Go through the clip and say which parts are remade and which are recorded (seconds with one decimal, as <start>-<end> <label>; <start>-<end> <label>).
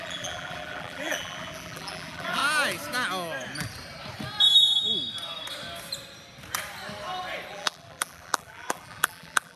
0.0-2.4 remade; 2.4-7.5 recorded; 7.5-9.6 remade